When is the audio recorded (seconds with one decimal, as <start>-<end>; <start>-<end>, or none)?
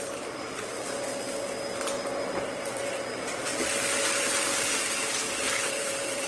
1.1-2.8; 3.5-5.7